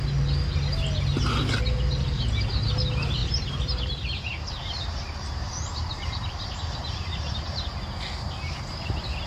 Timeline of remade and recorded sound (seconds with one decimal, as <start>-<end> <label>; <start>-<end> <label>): 0.0-3.2 recorded; 3.2-7.6 remade; 7.6-9.3 recorded